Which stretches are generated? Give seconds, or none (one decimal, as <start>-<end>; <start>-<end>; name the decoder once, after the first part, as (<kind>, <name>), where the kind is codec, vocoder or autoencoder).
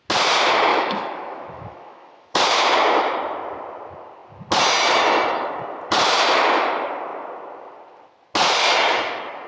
0.7-2.4 (autoencoder, DAC-VAE)